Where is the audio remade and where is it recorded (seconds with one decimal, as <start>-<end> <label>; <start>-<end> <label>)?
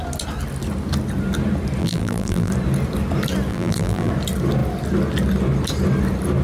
0.0-1.8 recorded; 1.8-2.5 remade; 2.5-3.5 recorded; 3.5-4.1 remade; 4.1-6.4 recorded